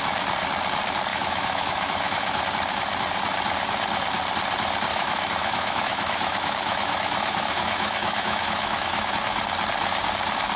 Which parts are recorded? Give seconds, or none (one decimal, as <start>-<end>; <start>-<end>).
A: 0.0-1.1; 2.4-4.9; 9.1-10.6